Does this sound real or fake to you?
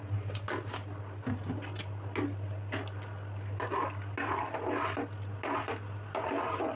real